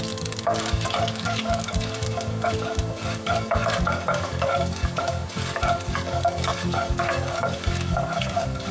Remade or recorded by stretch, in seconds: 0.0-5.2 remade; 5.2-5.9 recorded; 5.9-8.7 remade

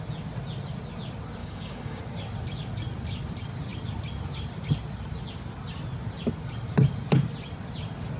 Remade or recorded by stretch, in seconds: 0.0-1.4 recorded; 1.4-2.0 remade; 2.0-8.2 recorded

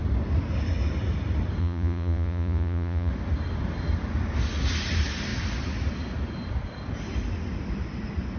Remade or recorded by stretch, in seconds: 0.0-1.6 recorded; 1.6-3.1 remade; 3.1-8.4 recorded

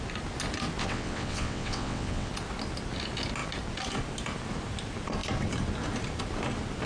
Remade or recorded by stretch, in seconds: 0.0-0.8 recorded; 0.8-2.3 remade; 2.3-6.9 recorded

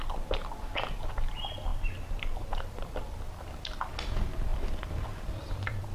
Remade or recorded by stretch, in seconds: 0.0-1.7 recorded; 1.7-2.5 remade; 2.5-4.5 recorded; 4.5-5.5 remade; 5.5-5.9 recorded